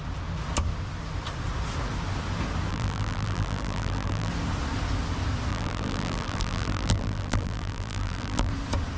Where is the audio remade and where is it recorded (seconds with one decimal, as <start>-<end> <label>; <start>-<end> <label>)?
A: 0.0-2.7 recorded; 2.7-4.3 remade; 4.3-5.5 recorded; 5.5-8.5 remade; 8.5-9.0 recorded